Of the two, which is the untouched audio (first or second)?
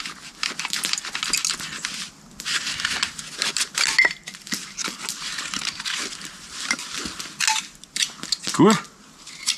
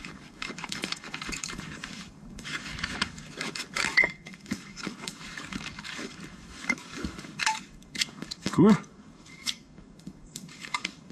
first